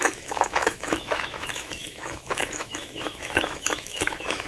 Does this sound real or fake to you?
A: fake